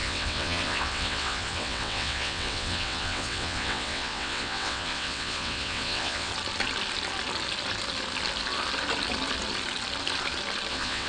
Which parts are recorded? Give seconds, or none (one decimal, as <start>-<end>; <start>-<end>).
6.3-10.7